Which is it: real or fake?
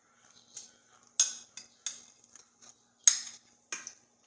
real